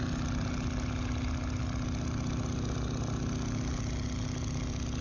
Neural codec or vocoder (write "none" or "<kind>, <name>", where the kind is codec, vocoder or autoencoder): none